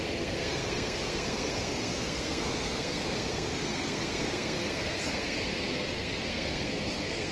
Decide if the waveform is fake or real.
fake